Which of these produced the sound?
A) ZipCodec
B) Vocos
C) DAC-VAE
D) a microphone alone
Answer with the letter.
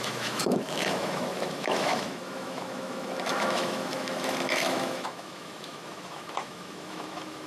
C